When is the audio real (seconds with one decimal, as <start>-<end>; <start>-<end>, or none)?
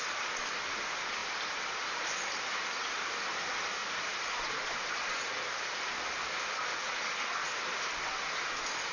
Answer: 0.0-3.8; 4.9-8.9